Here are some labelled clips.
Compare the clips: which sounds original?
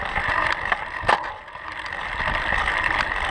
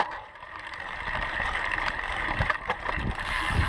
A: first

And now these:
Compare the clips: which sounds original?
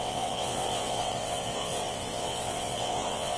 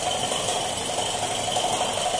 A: second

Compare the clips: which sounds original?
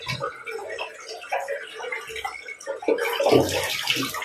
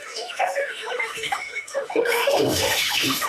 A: first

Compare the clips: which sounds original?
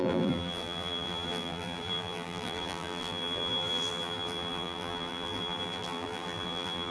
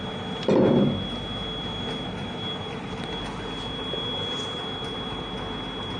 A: second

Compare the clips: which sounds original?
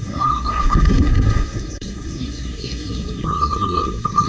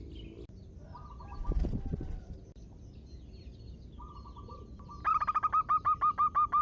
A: second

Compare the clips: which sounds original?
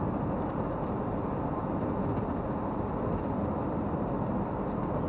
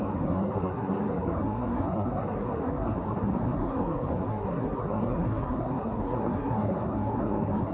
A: first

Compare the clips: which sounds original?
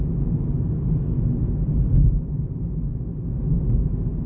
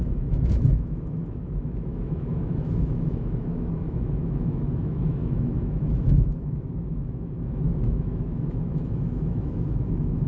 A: first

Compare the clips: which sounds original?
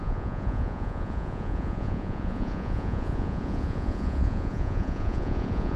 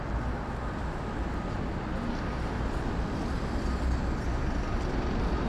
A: second